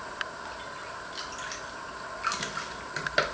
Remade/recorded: recorded